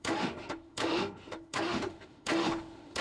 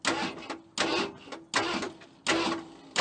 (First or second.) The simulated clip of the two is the first